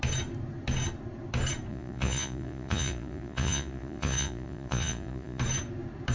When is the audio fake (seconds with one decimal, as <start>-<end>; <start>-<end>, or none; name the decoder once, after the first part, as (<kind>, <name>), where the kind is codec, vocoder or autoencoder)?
1.7-5.4 (vocoder, Vocos)